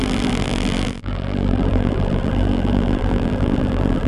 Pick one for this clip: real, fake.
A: fake